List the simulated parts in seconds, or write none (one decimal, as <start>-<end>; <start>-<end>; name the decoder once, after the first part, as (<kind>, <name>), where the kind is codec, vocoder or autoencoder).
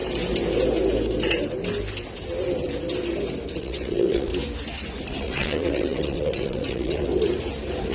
3.6-4.3 (vocoder, WaveNeXt); 5.1-7.1